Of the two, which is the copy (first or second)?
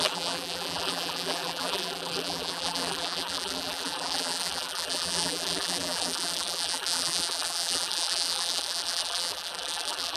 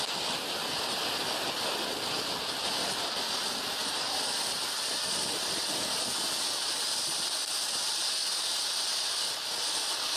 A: first